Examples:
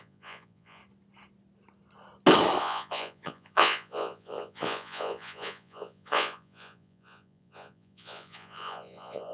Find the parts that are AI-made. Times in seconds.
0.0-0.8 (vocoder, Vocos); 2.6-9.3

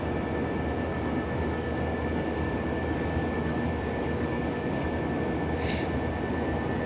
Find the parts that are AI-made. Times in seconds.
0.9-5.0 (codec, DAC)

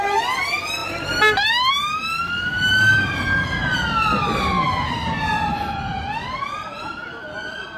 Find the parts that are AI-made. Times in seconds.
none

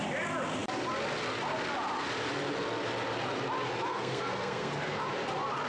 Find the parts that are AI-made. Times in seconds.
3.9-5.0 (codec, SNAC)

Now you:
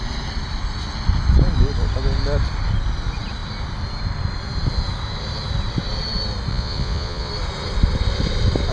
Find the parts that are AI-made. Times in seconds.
6.5-7.3 (vocoder, Vocos)

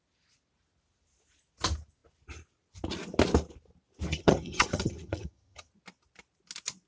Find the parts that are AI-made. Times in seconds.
4.1-5.7 (vocoder, HiFi-GAN)

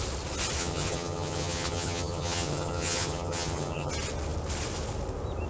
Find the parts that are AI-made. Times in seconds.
0.6-3.9 (vocoder, HiFi-GAN)

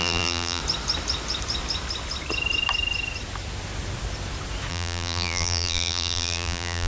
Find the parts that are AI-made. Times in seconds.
0.0-0.6 (vocoder, BigVGAN v2); 4.7-6.9